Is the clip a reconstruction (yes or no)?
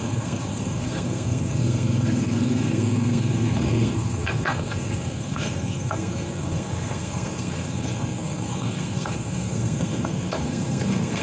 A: yes